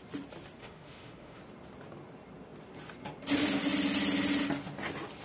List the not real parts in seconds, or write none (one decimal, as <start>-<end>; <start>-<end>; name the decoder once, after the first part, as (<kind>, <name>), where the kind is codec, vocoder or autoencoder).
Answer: 0.6-1.4 (autoencoder, DAC-VAE)